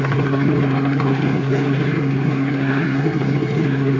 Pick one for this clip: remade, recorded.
remade